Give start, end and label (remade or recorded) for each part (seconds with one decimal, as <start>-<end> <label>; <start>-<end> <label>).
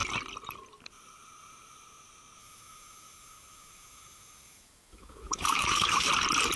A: 0.0-2.4 recorded; 2.4-6.1 remade; 6.1-6.6 recorded